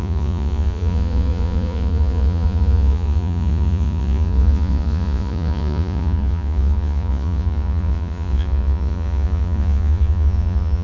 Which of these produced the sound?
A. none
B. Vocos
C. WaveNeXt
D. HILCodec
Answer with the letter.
B